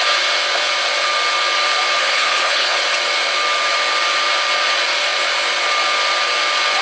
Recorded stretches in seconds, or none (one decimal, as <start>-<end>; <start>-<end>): 0.0-2.0; 2.8-6.8